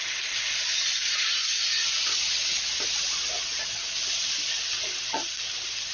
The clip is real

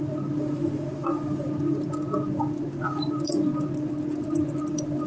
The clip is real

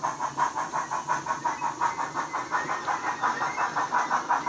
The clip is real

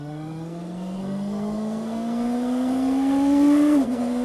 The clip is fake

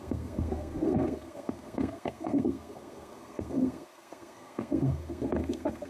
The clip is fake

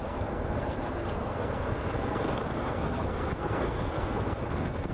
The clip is fake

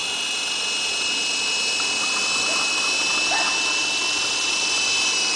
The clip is real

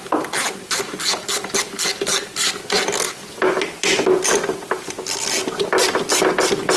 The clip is real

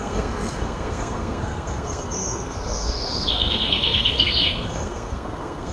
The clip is fake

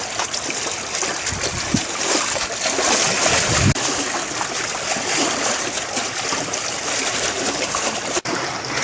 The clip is real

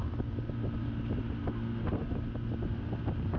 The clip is real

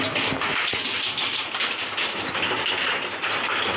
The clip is real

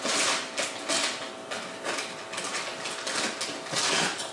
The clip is real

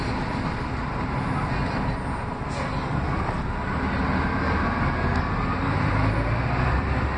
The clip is real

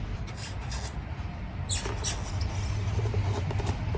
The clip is real